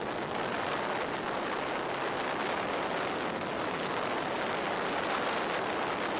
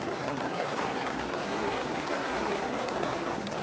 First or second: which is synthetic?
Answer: second